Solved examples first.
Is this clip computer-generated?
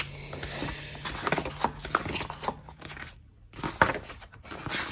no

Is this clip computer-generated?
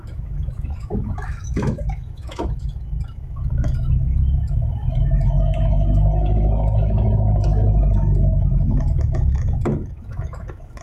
yes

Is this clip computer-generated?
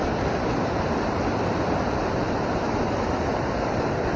no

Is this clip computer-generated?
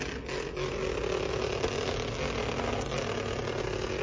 no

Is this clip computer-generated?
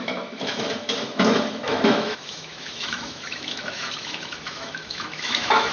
yes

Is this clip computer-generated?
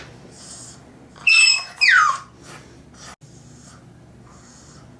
no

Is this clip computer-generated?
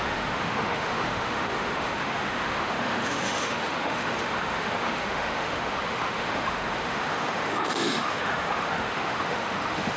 yes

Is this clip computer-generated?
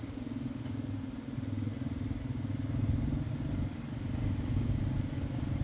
no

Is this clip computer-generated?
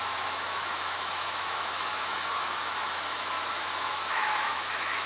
yes